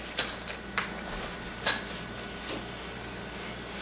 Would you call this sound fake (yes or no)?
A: no